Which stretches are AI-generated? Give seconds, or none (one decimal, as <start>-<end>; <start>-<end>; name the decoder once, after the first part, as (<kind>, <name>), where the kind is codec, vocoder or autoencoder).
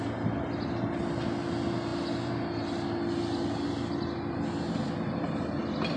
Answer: none